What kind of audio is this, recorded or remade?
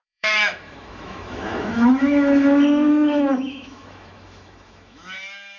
remade